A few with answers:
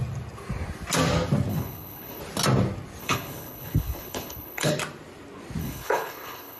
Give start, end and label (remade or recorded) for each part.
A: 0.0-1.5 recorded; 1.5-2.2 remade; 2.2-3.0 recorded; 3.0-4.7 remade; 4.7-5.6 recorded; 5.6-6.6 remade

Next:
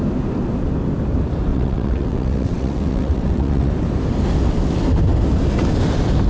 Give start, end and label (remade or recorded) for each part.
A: 0.0-1.5 recorded; 1.5-3.7 remade; 3.7-6.3 recorded

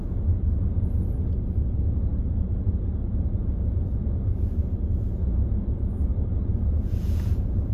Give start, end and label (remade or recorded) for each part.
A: 0.0-6.1 remade; 6.1-6.8 recorded; 6.8-7.7 remade

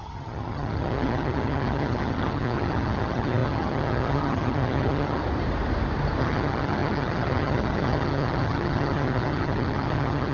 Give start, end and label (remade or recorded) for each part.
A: 0.0-5.2 remade; 5.2-6.2 recorded; 6.2-10.3 remade